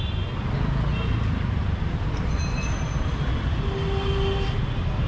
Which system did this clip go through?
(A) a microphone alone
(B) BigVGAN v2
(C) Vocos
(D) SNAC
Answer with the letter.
A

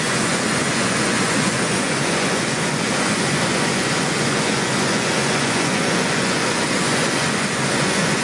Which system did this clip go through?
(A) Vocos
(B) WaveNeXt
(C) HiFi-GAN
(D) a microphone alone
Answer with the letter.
A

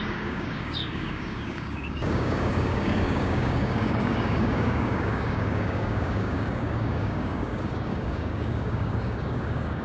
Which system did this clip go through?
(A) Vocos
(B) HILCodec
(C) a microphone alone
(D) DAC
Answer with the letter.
D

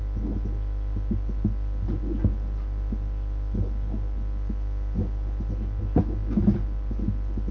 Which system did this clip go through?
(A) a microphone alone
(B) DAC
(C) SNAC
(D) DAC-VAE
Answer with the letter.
A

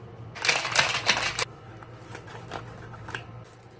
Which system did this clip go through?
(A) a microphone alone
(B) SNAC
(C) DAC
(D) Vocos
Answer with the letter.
A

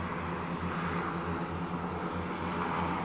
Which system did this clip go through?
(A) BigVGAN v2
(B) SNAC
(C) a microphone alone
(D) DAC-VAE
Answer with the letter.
C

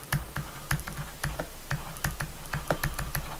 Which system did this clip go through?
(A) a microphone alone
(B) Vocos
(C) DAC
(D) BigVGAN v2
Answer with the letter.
A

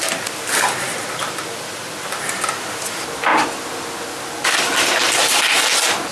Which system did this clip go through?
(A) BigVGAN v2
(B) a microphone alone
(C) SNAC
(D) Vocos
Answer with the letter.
B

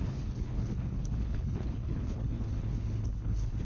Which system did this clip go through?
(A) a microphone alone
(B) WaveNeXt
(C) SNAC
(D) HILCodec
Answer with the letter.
D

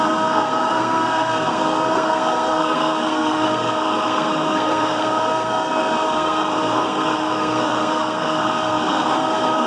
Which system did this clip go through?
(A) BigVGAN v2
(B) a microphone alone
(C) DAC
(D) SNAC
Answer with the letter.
D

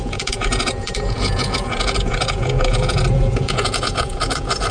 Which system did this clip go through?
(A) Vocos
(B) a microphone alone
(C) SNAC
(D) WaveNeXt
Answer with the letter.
A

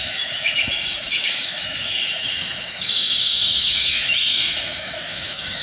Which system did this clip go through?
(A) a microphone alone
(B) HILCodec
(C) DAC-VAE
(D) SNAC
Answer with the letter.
C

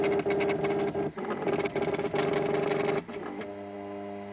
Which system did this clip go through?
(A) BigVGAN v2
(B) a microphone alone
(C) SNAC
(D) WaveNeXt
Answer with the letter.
B